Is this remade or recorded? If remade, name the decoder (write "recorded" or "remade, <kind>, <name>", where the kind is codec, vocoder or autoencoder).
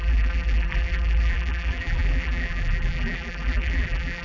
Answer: remade, vocoder, BigVGAN v2